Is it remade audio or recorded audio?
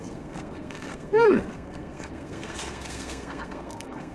remade